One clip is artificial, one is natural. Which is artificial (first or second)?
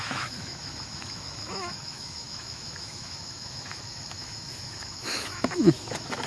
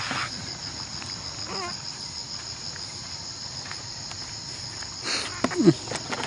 first